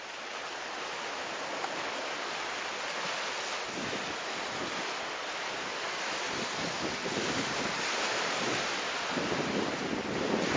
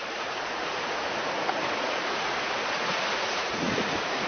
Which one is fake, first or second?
second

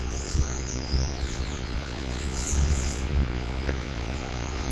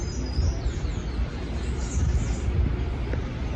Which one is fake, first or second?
first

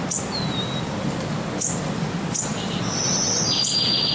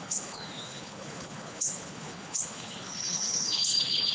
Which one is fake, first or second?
second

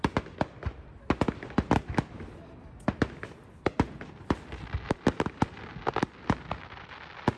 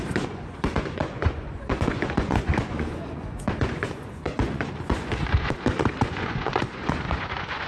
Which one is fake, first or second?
second